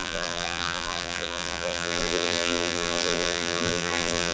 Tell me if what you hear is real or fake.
fake